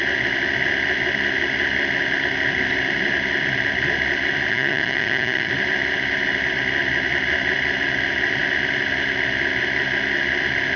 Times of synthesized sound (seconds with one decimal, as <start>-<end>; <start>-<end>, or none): 4.5-5.5